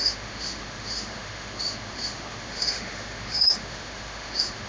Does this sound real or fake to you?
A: fake